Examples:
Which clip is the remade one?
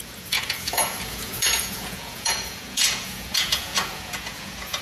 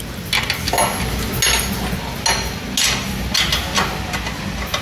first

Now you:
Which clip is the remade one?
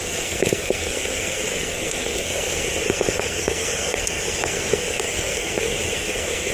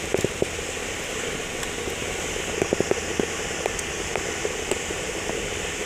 first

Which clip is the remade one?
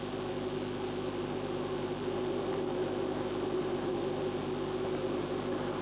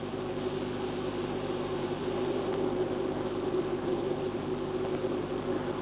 second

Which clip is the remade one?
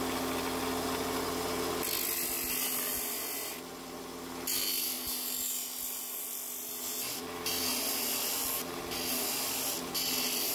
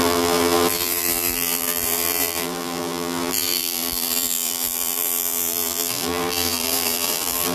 second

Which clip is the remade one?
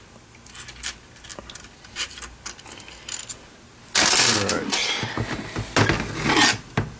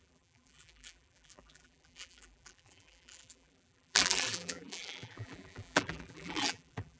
second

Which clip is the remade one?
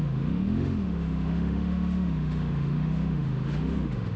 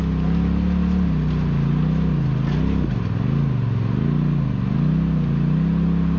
first